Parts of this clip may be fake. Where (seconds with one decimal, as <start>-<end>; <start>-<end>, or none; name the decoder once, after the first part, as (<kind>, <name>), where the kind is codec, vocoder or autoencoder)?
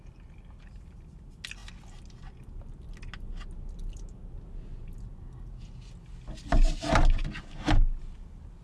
none